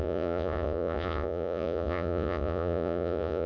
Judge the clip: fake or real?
fake